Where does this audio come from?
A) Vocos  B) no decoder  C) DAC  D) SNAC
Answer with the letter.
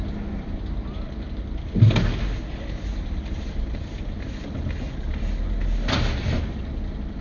B